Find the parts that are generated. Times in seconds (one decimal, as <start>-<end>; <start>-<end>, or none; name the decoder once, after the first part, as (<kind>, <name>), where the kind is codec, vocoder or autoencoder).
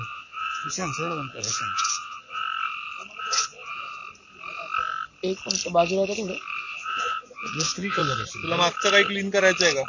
0.0-2.4 (vocoder, Vocos); 3.2-4.0; 6.6-8.0